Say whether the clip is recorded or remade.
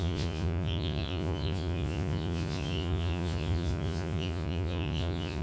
remade